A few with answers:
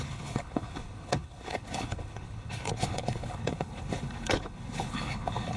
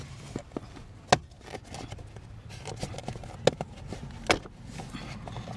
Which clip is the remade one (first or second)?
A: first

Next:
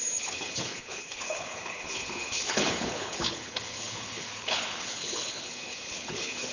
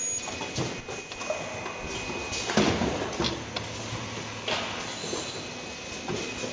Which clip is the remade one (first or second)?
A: first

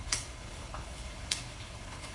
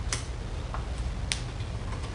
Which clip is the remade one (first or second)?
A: first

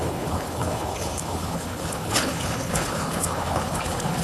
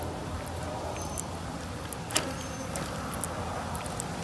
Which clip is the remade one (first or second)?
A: first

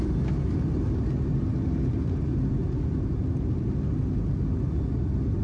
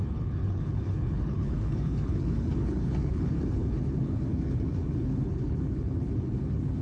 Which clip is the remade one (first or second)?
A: second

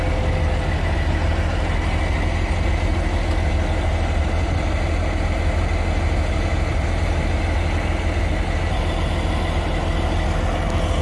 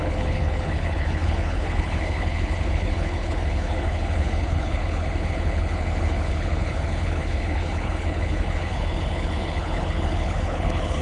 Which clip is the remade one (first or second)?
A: second